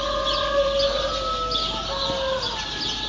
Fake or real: real